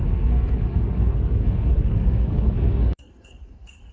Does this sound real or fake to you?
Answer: fake